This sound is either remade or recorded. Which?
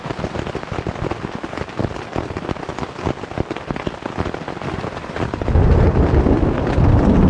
recorded